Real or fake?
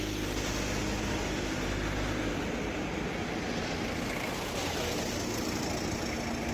real